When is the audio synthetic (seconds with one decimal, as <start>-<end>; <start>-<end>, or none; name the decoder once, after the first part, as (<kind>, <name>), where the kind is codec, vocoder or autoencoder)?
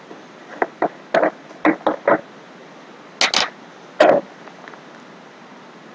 none